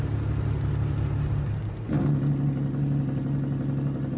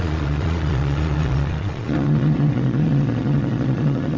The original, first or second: first